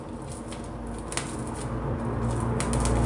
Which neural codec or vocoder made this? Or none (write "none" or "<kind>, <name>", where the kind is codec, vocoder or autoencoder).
none